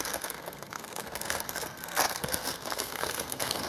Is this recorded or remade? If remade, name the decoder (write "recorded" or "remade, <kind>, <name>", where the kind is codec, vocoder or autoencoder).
remade, codec, SNAC